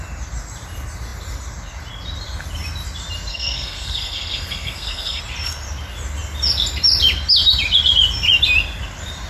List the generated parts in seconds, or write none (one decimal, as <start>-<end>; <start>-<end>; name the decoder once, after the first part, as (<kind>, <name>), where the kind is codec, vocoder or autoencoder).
3.3-5.2 (codec, SNAC)